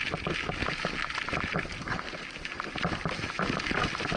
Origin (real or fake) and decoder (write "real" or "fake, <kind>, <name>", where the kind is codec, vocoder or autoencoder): real